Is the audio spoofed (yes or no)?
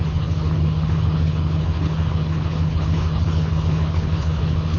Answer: yes